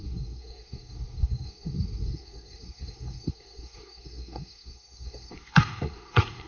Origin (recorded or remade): remade